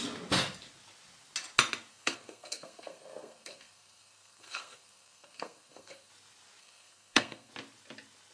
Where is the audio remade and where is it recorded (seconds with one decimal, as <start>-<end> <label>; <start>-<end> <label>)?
0.0-1.9 recorded; 1.9-6.1 remade; 6.1-6.6 recorded; 6.6-7.5 remade; 7.5-8.3 recorded